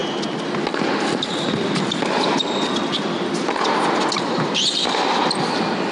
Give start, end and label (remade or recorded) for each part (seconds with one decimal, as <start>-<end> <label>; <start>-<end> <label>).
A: 0.0-5.9 recorded